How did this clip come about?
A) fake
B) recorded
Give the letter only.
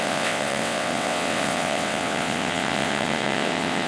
A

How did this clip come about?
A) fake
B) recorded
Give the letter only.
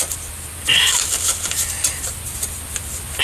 B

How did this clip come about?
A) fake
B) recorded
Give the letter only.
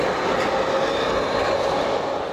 B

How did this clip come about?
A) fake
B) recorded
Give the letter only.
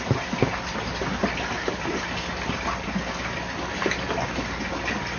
B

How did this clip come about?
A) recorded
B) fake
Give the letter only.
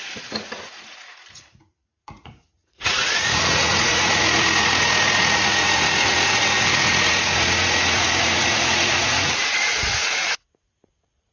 B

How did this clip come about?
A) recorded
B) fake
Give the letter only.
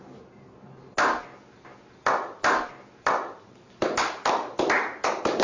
A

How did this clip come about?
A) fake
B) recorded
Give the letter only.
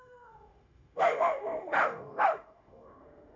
A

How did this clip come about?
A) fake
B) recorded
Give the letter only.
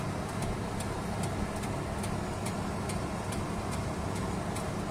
B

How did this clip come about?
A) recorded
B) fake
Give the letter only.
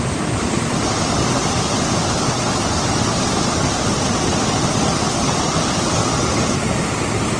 A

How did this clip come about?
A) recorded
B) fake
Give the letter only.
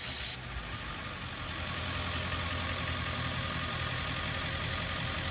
A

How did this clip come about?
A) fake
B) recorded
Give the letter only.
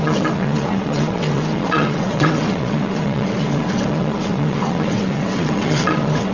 A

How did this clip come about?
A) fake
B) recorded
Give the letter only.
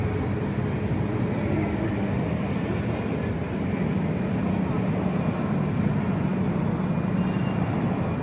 B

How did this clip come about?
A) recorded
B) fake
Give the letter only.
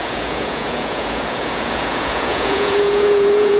B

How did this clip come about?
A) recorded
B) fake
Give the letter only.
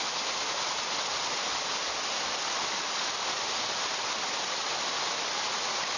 A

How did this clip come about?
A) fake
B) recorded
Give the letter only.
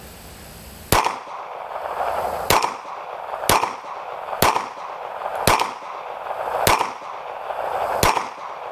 B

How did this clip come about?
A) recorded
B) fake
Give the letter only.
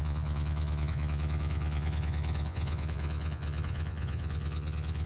B